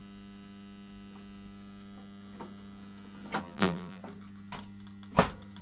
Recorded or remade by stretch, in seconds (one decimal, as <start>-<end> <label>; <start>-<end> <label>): 0.0-3.4 recorded; 3.4-4.0 remade; 4.0-5.6 recorded